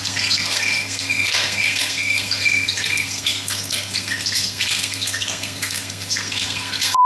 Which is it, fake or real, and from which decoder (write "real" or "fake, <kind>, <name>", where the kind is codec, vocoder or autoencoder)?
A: fake, codec, SNAC